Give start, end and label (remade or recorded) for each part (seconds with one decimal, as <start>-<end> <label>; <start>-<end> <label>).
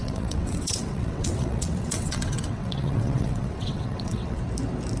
0.0-4.4 remade; 4.4-5.0 recorded